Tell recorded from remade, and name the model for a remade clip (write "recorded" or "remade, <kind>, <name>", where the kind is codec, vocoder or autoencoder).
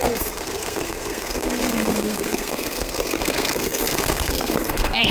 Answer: remade, codec, SNAC